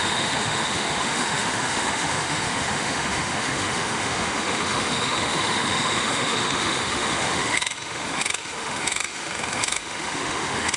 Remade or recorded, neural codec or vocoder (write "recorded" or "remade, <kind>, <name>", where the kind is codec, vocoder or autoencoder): remade, autoencoder, DAC-VAE